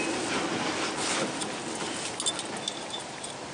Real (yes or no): yes